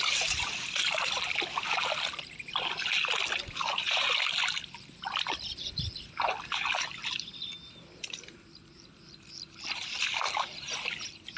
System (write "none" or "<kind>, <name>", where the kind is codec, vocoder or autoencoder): none